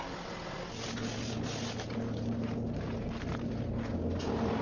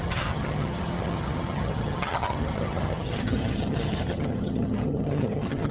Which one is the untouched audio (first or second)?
first